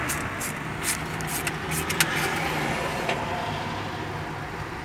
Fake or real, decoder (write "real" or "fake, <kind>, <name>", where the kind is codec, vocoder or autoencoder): real